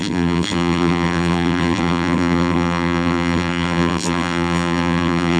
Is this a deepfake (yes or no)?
yes